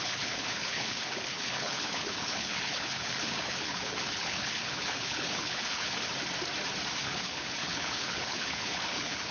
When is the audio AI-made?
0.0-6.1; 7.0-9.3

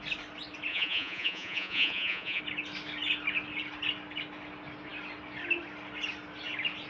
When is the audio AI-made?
0.7-2.4

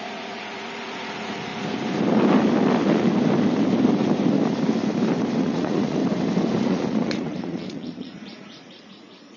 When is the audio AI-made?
0.0-1.5; 5.4-6.0; 6.6-9.4

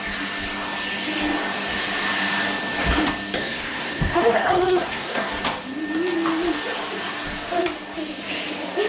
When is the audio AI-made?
3.4-5.3